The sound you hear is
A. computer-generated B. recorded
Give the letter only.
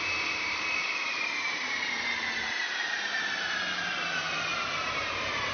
A